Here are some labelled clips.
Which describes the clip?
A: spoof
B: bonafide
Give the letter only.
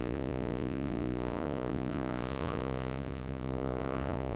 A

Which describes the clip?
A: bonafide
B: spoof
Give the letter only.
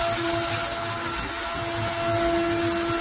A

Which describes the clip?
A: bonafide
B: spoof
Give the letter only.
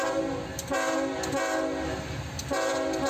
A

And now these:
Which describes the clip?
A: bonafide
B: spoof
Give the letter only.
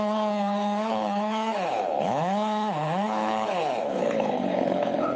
B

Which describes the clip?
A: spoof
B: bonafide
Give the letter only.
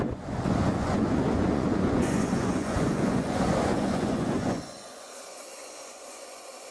A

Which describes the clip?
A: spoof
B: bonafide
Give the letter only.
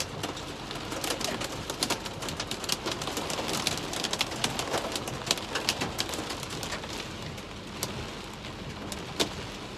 B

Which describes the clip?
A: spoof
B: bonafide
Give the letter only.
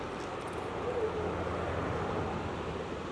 B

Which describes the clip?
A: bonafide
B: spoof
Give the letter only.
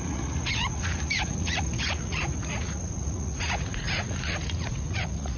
B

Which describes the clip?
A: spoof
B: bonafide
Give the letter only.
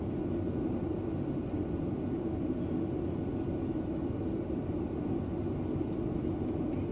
B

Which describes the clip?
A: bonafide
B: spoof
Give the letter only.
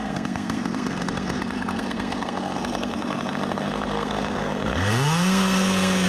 B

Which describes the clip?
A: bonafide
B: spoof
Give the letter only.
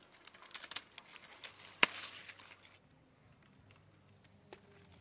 A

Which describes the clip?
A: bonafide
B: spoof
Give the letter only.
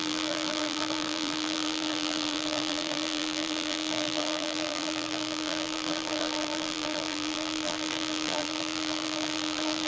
B